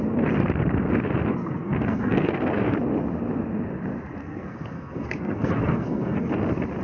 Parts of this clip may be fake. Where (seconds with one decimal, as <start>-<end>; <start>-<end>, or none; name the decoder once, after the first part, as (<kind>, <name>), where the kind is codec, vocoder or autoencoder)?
1.4-2.4 (codec, SNAC); 4.2-6.3